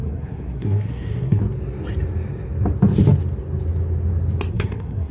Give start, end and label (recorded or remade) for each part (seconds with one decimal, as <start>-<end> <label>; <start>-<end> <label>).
0.0-1.4 remade; 1.4-4.5 recorded; 4.5-5.1 remade